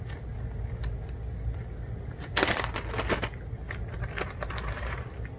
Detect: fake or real real